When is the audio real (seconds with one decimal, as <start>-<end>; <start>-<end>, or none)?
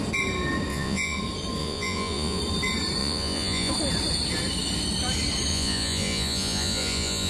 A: 0.0-0.7; 1.2-1.6; 2.4-3.0; 3.7-5.5